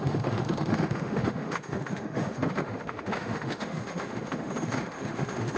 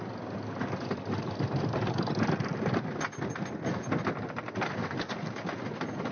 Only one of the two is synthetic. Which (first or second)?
first